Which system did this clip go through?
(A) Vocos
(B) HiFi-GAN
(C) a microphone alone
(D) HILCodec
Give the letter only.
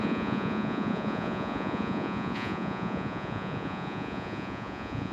A